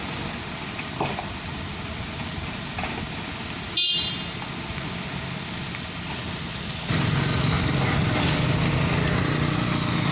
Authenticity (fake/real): real